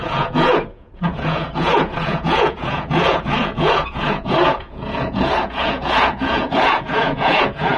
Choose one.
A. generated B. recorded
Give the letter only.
A